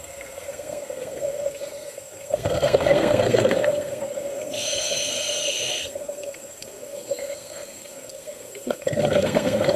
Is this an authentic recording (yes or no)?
no